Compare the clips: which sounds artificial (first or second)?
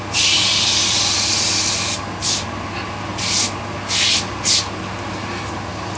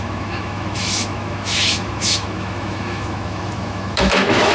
second